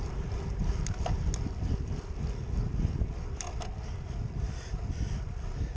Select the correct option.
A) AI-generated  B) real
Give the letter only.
B